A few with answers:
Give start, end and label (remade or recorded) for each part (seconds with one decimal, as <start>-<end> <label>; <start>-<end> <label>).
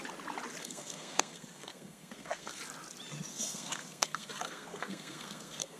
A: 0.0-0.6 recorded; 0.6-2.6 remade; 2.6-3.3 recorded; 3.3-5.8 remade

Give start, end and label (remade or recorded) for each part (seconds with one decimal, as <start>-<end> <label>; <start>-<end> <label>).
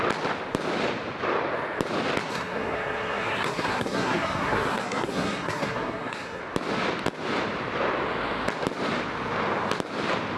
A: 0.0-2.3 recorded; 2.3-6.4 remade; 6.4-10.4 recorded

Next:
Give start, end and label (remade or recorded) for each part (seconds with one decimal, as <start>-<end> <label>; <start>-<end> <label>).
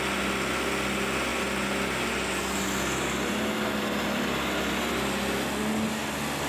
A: 0.0-6.5 recorded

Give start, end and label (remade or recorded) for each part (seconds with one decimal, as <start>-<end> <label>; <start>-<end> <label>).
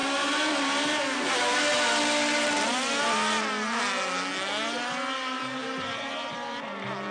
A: 0.0-7.1 recorded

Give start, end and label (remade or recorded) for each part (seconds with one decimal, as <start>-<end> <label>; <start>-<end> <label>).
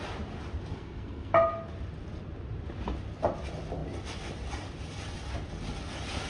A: 0.0-0.7 recorded; 0.7-1.3 remade; 1.3-6.3 recorded